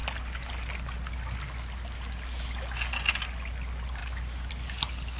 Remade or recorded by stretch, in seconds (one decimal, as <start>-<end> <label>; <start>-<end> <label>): 0.0-5.2 recorded